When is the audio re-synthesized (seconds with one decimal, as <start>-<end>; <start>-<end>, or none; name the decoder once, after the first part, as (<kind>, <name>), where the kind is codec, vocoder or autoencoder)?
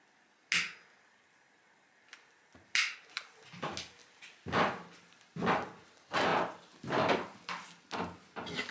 none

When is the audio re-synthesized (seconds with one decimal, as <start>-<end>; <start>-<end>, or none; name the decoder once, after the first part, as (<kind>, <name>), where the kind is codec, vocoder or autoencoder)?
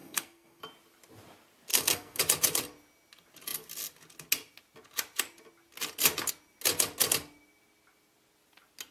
0.0-0.6 (codec, SNAC); 1.7-2.2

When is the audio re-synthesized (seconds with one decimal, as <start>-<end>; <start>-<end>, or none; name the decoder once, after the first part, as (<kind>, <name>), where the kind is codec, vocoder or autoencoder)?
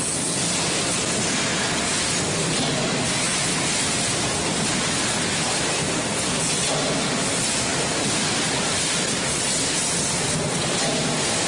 none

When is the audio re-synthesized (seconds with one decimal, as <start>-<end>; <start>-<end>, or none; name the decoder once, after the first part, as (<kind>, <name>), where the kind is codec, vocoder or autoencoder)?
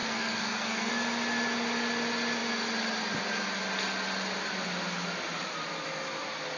0.0-0.9 (codec, SNAC)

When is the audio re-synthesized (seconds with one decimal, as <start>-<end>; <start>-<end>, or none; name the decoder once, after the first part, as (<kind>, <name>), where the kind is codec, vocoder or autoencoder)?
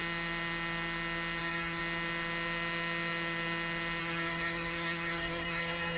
1.4-1.8 (codec, SNAC); 4.0-6.0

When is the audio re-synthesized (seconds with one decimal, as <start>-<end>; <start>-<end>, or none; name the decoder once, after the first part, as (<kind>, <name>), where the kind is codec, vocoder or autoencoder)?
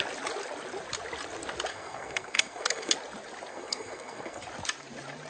1.7-2.9 (codec, SNAC); 3.5-4.4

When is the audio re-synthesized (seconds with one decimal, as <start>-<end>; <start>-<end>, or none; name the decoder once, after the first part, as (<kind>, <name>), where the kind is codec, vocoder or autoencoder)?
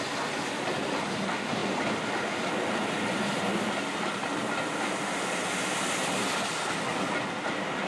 none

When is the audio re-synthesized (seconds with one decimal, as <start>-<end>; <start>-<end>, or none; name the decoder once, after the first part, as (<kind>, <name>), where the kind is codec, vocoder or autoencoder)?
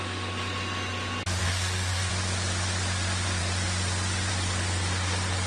1.4-2.1 (codec, SNAC)